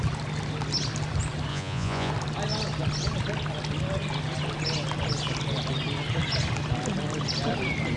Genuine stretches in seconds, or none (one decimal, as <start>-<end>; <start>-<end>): 0.0-1.5; 2.1-8.0